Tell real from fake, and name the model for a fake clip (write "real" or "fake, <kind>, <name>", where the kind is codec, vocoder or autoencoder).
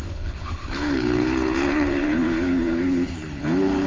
fake, codec, HILCodec